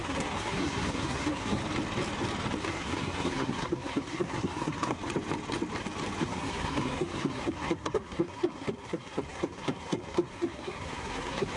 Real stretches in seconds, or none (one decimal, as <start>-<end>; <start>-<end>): 1.6-2.6; 5.0-6.2